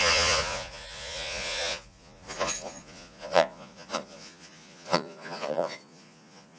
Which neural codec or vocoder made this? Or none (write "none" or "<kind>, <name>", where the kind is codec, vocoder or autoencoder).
vocoder, Vocos